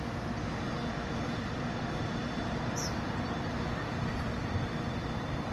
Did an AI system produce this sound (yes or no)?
yes